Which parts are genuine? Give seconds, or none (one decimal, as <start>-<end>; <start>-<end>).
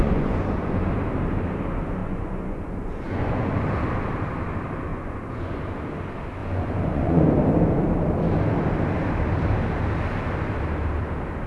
0.8-2.0; 3.6-4.9; 5.6-6.4; 7.2-11.5